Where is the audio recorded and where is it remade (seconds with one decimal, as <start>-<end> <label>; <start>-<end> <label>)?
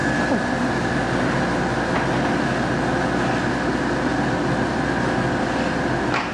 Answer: 0.0-6.3 recorded